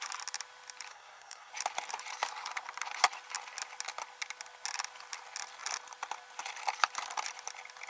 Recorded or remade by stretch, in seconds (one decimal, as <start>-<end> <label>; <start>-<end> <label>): 0.0-0.9 recorded; 0.9-1.5 remade; 1.5-7.9 recorded